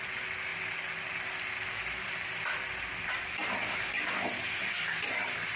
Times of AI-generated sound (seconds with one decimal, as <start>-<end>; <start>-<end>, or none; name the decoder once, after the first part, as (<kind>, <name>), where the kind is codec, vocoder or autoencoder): none